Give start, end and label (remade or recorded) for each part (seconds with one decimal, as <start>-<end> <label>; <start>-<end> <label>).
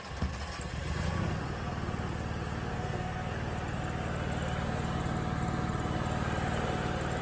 0.0-2.7 recorded; 2.7-3.3 remade; 3.3-7.2 recorded